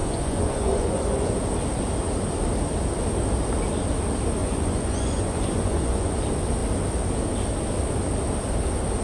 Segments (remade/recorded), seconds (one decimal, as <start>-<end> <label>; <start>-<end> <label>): 0.0-1.3 remade; 1.3-4.4 recorded; 4.4-6.1 remade; 6.1-9.0 recorded